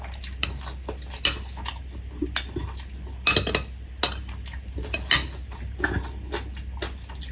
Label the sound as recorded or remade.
recorded